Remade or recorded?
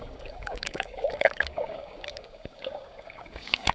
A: remade